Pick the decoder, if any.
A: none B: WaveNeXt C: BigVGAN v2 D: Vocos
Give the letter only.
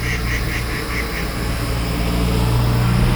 A